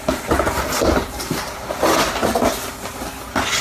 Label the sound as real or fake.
real